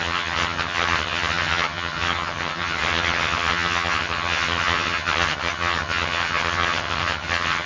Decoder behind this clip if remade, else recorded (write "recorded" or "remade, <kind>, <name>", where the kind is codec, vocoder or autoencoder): remade, vocoder, HiFi-GAN